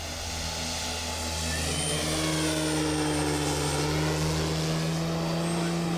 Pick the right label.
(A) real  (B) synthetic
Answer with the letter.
A